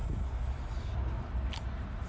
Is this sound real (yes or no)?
yes